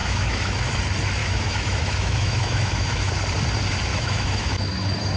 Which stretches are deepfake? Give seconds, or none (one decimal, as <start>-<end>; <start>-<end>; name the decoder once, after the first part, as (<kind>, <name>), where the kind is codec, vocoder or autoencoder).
0.0-0.7 (autoencoder, DAC-VAE); 1.2-3.1; 3.9-4.6